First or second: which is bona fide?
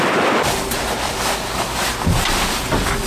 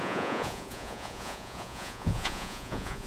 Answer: first